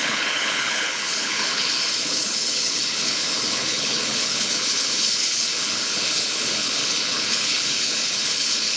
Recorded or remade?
remade